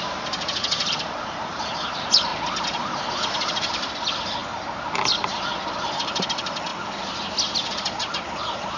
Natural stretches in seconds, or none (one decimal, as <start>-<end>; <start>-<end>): 2.3-3.3; 4.4-5.9